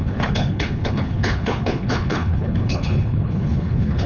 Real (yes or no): no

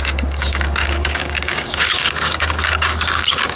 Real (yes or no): no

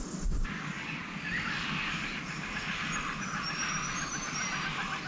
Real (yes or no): yes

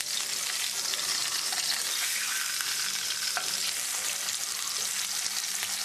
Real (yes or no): yes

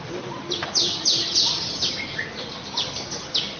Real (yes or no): yes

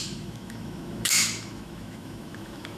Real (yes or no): no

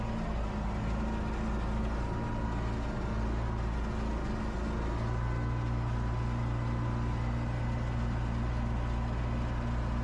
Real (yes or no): yes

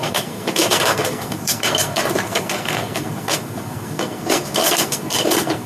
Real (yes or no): no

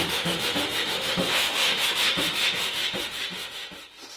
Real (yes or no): no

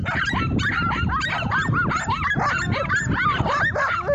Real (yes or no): yes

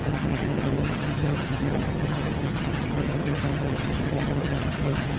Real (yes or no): no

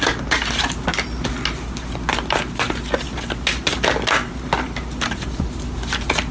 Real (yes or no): yes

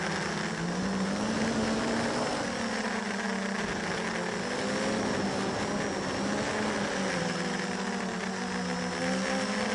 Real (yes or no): yes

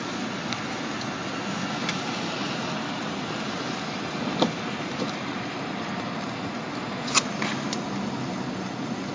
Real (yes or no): yes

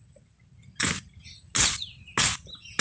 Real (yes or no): yes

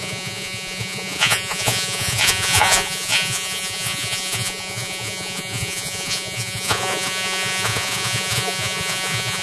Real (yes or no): no